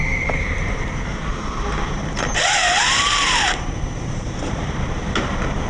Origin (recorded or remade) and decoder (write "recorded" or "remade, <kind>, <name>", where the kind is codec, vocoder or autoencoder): remade, vocoder, BigVGAN v2